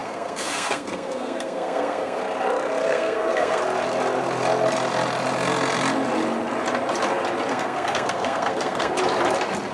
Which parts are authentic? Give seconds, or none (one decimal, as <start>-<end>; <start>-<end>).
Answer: 2.2-2.8; 3.6-7.5; 8.9-9.7